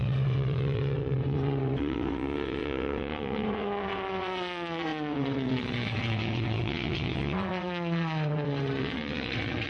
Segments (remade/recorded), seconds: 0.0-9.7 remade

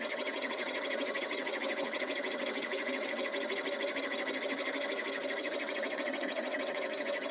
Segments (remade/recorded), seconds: 0.0-3.3 remade; 3.3-5.4 recorded; 5.4-7.3 remade